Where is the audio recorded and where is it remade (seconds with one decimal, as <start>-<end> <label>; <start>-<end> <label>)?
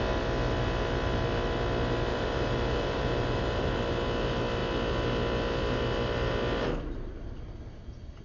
0.0-2.1 recorded; 2.1-3.8 remade; 3.8-8.2 recorded